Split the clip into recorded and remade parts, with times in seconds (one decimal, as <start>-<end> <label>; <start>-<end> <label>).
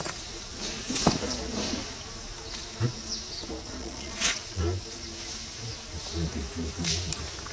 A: 0.0-3.8 recorded; 3.8-4.6 remade; 4.6-7.5 recorded